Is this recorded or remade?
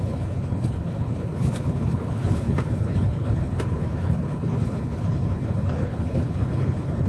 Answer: remade